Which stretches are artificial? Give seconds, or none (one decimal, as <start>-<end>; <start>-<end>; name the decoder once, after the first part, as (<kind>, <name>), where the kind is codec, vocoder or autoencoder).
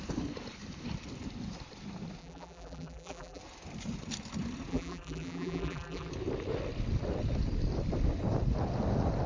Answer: 2.2-3.4 (vocoder, BigVGAN v2); 4.7-6.1